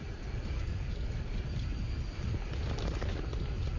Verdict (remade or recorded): recorded